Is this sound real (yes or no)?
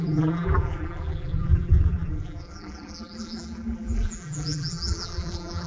no